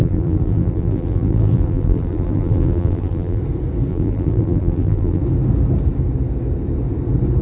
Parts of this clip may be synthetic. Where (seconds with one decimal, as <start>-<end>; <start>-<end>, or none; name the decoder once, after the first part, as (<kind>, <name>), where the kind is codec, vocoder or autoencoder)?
0.0-3.4 (vocoder, BigVGAN v2); 3.9-5.2